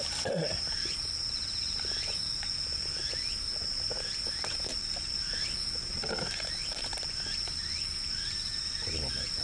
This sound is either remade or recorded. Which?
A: recorded